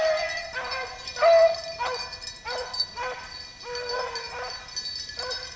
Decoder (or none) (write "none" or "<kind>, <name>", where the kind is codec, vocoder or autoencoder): none